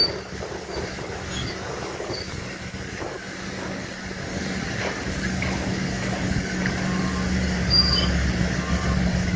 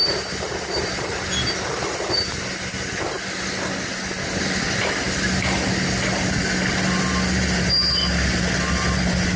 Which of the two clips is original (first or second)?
second